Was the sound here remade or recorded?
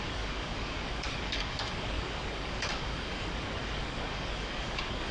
remade